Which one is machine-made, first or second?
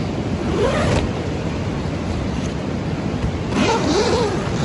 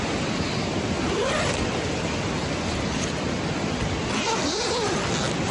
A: first